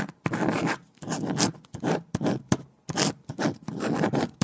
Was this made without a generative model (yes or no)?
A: yes